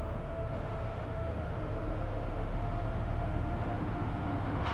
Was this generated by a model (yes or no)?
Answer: yes